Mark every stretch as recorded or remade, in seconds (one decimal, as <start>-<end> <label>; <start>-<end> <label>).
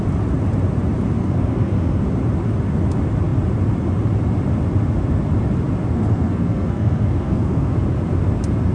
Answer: 0.0-1.2 recorded; 1.2-2.0 remade; 2.0-5.9 recorded; 5.9-7.7 remade; 7.7-8.7 recorded